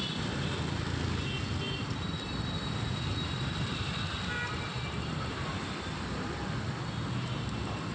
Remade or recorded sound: recorded